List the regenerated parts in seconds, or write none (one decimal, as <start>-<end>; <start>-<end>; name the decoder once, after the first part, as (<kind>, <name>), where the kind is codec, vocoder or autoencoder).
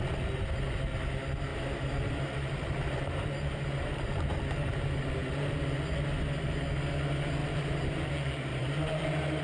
1.5-4.4 (vocoder, BigVGAN v2); 7.4-8.1; 8.5-9.0